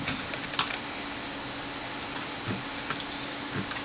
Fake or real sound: real